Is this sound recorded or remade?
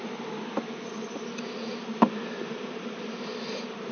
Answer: recorded